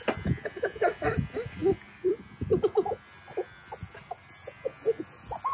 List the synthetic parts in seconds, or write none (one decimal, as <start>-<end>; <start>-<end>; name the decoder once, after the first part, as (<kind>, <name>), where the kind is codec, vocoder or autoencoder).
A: none